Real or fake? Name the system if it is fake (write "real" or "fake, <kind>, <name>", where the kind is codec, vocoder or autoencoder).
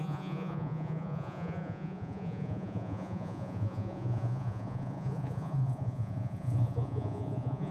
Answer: fake, vocoder, Vocos